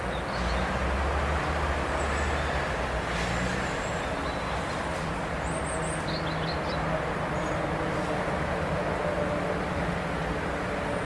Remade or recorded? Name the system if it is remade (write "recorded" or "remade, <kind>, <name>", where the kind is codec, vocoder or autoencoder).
recorded